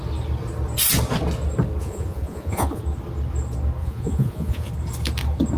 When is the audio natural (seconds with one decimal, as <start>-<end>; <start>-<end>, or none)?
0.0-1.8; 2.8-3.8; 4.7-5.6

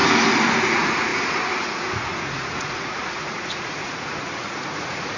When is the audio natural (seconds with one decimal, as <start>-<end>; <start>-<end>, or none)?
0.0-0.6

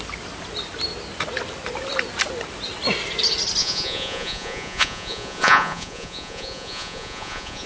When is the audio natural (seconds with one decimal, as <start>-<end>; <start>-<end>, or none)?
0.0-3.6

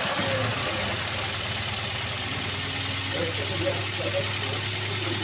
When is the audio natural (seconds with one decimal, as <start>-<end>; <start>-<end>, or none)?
0.0-5.2

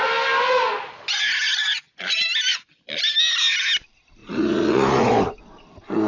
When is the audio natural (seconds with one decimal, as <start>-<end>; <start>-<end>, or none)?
0.0-4.2; 5.1-6.1

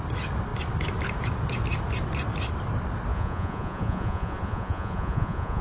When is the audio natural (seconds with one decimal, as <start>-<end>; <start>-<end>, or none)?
0.0-3.1